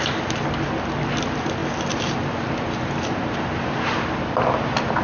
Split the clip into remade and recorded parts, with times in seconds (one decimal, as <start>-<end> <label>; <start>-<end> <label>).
0.0-5.0 recorded